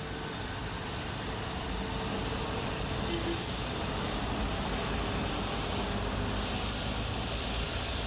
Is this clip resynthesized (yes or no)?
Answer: no